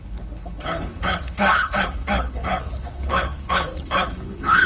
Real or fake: fake